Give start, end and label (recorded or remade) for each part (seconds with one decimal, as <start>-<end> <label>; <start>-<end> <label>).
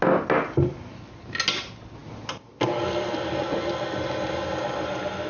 0.0-5.3 recorded